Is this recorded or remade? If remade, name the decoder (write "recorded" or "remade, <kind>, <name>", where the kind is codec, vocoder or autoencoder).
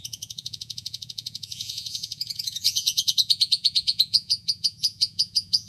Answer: remade, vocoder, Vocos